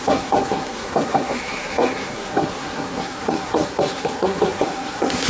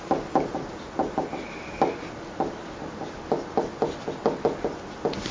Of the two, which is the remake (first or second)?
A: first